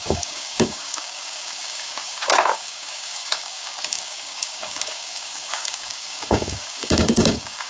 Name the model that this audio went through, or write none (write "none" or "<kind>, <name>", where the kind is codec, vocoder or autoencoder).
codec, DAC